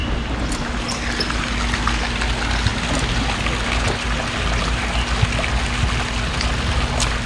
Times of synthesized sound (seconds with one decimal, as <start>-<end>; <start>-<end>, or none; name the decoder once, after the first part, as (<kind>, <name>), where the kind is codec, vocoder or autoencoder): none